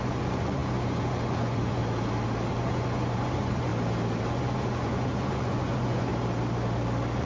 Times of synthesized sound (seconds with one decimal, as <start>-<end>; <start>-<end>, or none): 0.0-1.8; 2.5-3.7; 4.3-6.1